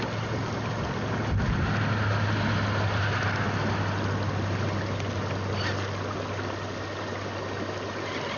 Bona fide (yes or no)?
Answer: yes